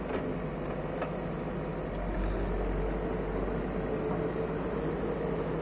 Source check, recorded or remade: recorded